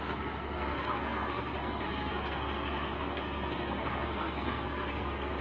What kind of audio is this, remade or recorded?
remade